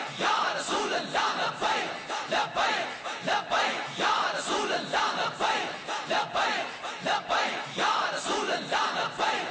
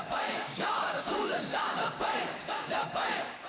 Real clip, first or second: first